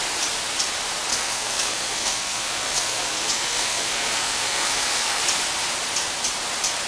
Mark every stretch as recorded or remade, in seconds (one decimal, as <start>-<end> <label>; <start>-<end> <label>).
0.0-1.1 recorded; 1.1-5.2 remade; 5.2-6.9 recorded